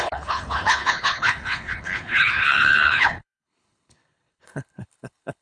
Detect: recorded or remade remade